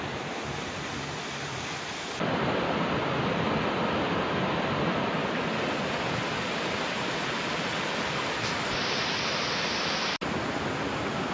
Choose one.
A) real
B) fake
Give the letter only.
A